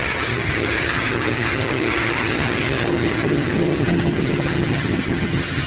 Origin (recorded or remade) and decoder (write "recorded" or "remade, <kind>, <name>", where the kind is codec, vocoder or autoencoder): remade, vocoder, HiFi-GAN